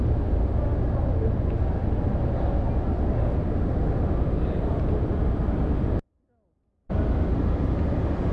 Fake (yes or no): no